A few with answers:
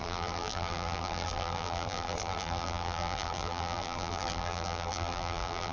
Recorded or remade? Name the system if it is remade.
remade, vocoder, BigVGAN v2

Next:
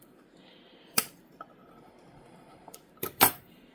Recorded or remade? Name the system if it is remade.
remade, vocoder, BigVGAN v2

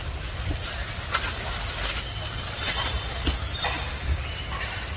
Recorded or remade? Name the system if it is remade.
recorded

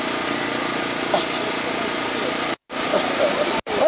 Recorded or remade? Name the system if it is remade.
recorded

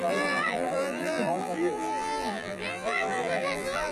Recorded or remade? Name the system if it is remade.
remade, vocoder, BigVGAN v2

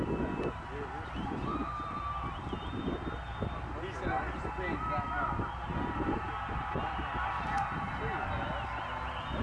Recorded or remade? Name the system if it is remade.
recorded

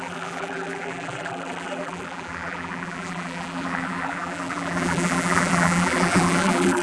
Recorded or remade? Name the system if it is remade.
remade, vocoder, BigVGAN v2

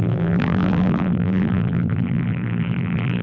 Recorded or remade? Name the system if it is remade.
remade, vocoder, BigVGAN v2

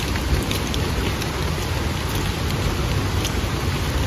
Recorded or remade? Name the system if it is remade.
recorded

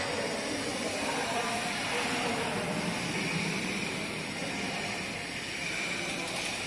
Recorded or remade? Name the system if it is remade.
remade, vocoder, BigVGAN v2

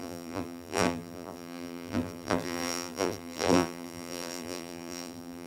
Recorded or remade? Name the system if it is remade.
remade, vocoder, BigVGAN v2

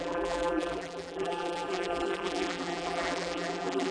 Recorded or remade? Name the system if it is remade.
remade, vocoder, BigVGAN v2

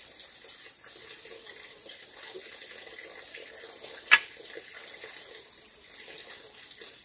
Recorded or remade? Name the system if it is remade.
recorded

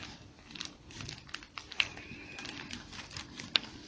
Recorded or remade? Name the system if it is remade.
remade, vocoder, BigVGAN v2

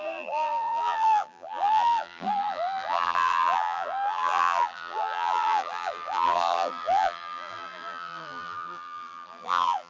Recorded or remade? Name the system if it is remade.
remade, vocoder, BigVGAN v2